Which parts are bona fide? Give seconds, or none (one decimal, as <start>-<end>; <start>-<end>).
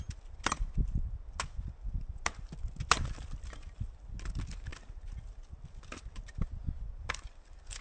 0.0-7.8